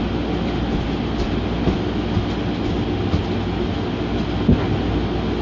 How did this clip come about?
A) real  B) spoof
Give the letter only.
A